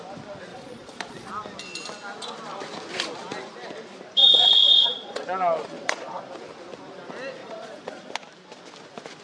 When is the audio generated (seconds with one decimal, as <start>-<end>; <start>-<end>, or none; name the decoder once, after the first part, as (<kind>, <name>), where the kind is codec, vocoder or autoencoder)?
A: 0.5-1.3 (vocoder, Vocos); 4.2-6.2; 7.4-8.1